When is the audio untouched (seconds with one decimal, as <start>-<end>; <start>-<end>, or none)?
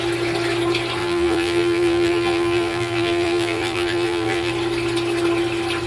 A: 0.0-1.0; 4.5-5.9